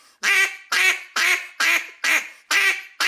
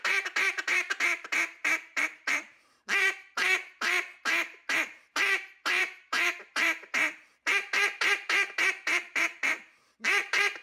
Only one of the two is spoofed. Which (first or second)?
second